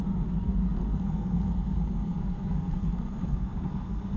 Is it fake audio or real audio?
fake